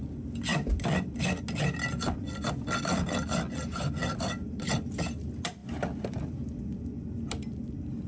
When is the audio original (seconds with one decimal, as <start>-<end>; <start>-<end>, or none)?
0.0-4.0; 4.8-8.1